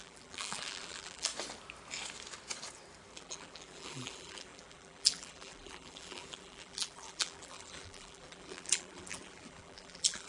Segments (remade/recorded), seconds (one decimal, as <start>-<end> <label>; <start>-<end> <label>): 0.0-1.3 remade; 1.3-3.1 recorded; 3.1-10.3 remade